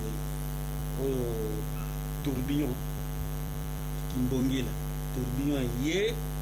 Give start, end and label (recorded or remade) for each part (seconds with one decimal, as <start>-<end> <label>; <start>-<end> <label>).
0.0-2.2 recorded; 2.2-4.8 remade; 4.8-6.4 recorded